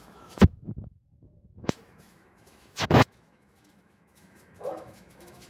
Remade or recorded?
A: remade